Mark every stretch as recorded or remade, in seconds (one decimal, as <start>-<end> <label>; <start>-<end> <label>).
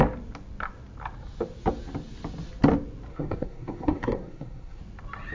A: 0.0-3.1 recorded; 3.1-4.8 remade; 4.8-5.3 recorded